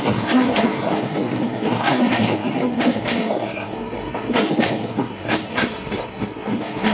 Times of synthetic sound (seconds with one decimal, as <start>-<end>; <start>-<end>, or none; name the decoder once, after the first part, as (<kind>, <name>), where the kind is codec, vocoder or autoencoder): 0.0-6.9 (codec, SNAC)